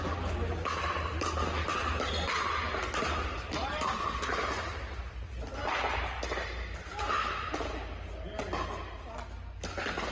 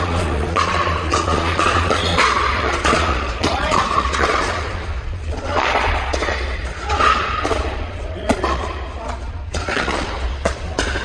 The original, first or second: first